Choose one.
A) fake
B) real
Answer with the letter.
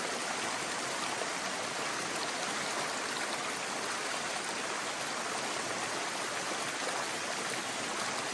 B